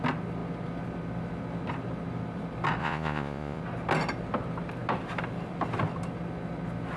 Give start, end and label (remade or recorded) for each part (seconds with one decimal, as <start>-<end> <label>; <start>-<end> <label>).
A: 0.0-2.8 recorded; 2.8-3.6 remade; 3.6-7.0 recorded